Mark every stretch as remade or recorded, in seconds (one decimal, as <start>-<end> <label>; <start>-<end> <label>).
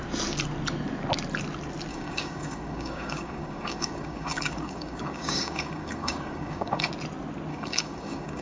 0.0-1.9 recorded; 1.9-6.9 remade; 6.9-7.5 recorded; 7.5-8.4 remade